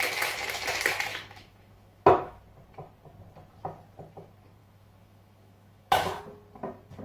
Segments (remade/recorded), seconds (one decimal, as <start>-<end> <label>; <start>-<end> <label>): 0.0-1.1 recorded; 1.1-2.4 remade; 2.4-4.6 recorded; 4.6-6.2 remade; 6.2-7.0 recorded